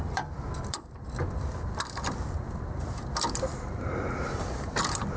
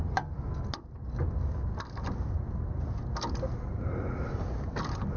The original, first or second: second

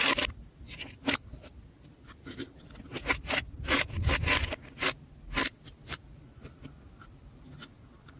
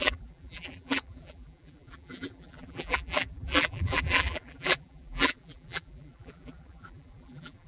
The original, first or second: first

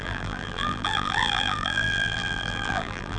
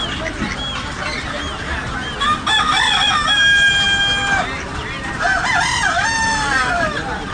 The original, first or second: second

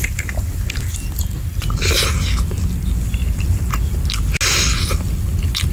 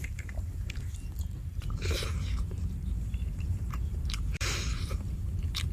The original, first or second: first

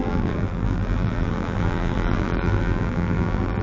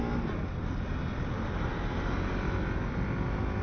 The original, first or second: second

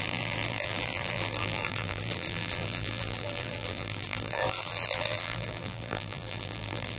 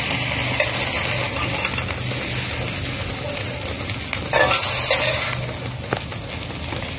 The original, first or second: second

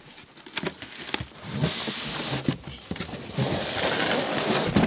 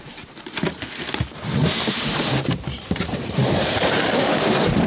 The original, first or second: first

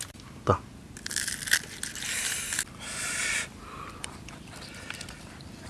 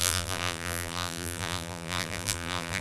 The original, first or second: first